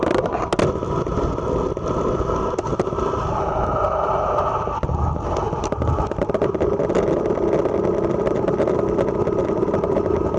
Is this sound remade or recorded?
recorded